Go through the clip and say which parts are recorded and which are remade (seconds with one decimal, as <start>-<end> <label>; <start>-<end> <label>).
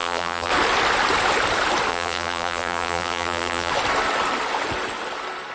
0.0-0.5 remade; 0.5-1.9 recorded; 1.9-3.7 remade; 3.7-5.5 recorded